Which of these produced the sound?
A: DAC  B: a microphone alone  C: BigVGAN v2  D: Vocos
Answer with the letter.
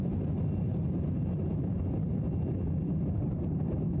B